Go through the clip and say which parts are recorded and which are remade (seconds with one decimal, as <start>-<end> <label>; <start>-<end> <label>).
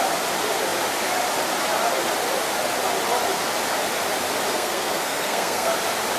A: 0.0-4.5 recorded; 4.5-5.7 remade; 5.7-6.2 recorded